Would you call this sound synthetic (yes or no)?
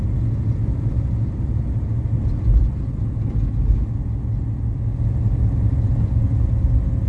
no